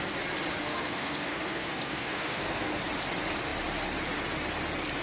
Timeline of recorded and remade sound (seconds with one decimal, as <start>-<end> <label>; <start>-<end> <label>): 0.0-0.6 recorded; 0.6-2.8 remade; 2.8-5.0 recorded